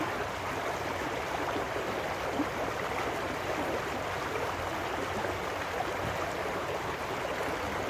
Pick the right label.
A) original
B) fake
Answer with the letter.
A